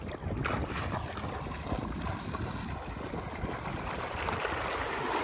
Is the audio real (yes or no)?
yes